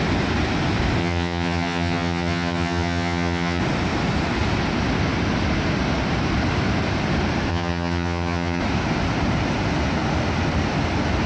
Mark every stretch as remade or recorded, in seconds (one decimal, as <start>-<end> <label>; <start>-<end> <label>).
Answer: 0.0-1.0 recorded; 1.0-3.6 remade; 3.6-7.5 recorded; 7.5-8.6 remade; 8.6-11.3 recorded